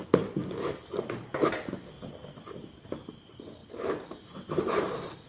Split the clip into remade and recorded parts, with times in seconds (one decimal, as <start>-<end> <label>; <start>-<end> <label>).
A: 0.0-3.6 remade; 3.6-4.1 recorded; 4.1-5.3 remade